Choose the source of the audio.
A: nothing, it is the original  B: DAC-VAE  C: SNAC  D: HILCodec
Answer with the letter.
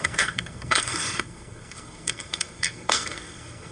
C